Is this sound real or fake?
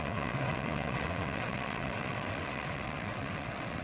fake